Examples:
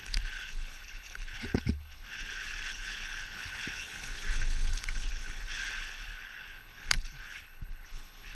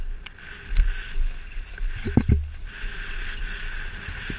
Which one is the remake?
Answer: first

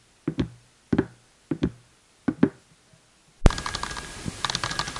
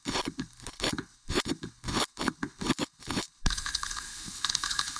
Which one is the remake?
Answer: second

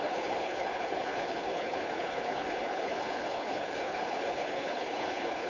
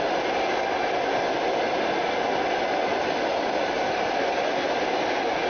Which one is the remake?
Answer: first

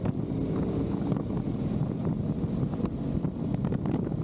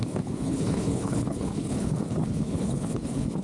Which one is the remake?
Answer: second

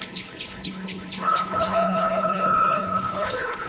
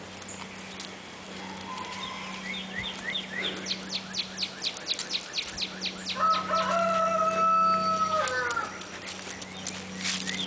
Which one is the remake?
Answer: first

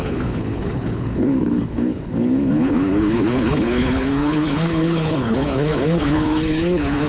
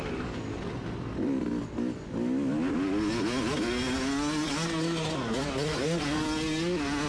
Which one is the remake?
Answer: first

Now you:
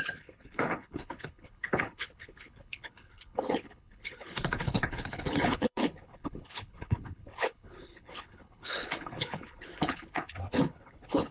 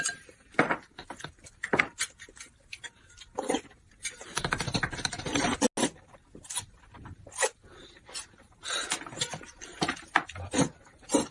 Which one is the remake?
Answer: first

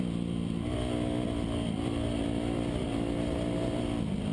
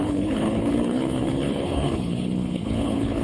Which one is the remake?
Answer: second